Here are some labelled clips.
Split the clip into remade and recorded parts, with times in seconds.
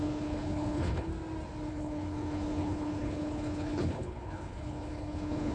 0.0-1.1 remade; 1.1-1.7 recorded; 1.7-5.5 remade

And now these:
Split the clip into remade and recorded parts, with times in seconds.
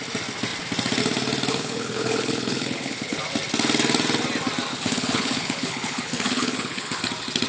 0.0-1.5 recorded; 1.5-3.2 remade; 3.2-4.7 recorded; 4.7-7.0 remade; 7.0-7.5 recorded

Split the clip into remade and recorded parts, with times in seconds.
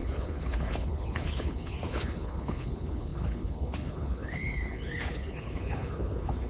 0.0-6.5 remade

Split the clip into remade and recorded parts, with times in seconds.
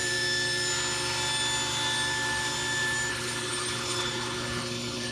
0.0-3.1 recorded; 3.1-5.1 remade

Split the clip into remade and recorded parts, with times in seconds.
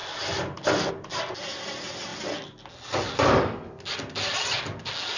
0.0-5.2 recorded